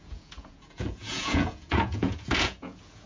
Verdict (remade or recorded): remade